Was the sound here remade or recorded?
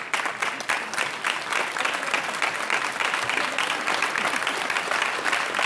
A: remade